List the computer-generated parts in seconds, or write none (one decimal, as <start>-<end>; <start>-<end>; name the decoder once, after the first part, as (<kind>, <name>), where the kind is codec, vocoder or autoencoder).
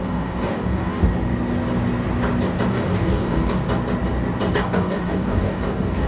0.0-1.0 (codec, DAC); 2.7-3.6; 4.5-6.1